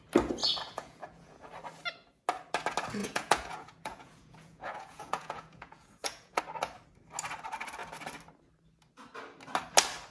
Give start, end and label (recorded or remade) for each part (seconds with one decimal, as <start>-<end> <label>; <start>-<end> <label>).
0.0-0.4 recorded; 0.4-1.5 remade; 1.5-3.0 recorded; 3.0-6.4 remade; 6.4-10.1 recorded